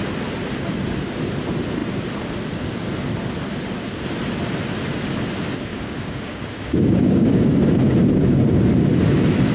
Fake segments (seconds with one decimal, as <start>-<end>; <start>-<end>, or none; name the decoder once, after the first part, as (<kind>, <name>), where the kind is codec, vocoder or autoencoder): 5.7-7.4 (codec, DAC)